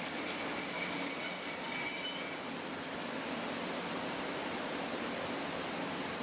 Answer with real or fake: real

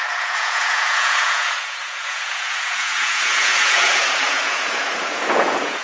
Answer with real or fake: fake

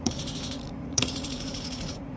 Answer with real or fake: fake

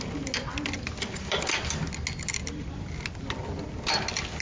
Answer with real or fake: real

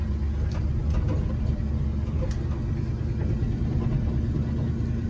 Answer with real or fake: real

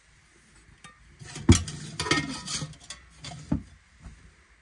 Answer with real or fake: real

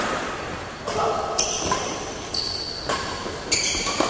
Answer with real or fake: real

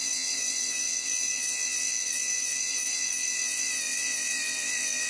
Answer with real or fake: fake